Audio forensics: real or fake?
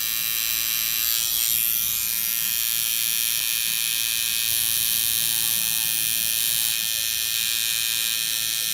real